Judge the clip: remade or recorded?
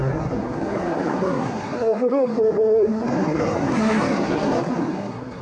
remade